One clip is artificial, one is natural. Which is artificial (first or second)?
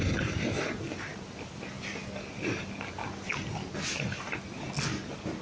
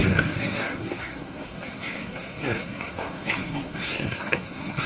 second